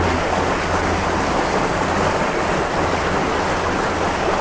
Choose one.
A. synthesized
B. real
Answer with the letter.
B